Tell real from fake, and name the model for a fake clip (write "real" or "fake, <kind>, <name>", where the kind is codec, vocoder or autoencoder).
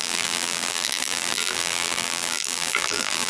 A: fake, vocoder, BigVGAN v2